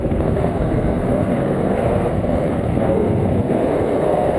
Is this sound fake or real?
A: fake